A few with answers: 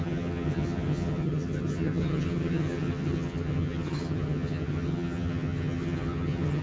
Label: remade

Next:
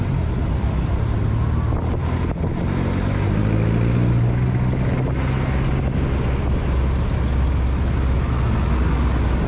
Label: recorded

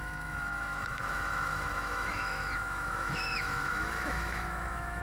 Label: remade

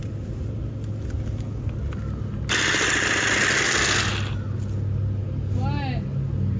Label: recorded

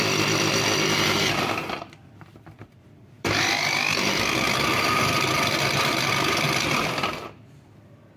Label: remade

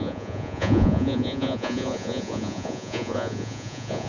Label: remade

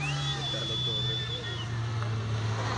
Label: recorded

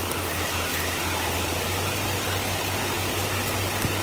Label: recorded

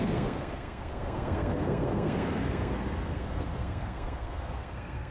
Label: remade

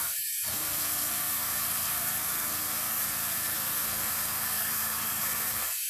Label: remade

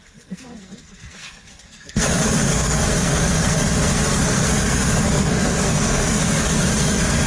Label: remade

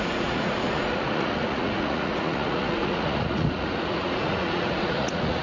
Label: remade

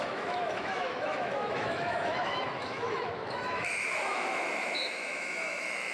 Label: remade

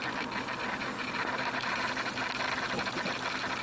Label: recorded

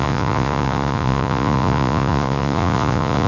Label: remade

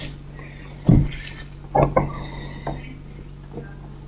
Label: recorded